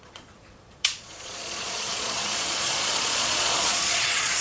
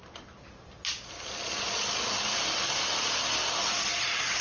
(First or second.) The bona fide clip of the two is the second